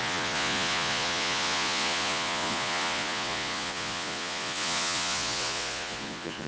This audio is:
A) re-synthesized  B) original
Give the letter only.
A